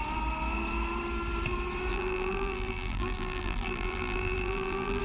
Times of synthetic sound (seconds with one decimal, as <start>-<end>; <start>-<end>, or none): 1.9-5.0